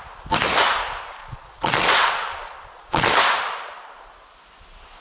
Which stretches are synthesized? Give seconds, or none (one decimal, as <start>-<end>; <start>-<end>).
1.2-3.1